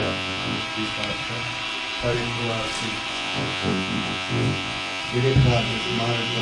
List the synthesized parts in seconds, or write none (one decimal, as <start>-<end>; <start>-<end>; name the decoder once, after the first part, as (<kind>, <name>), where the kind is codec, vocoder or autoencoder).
0.0-0.6 (vocoder, Vocos); 3.1-5.0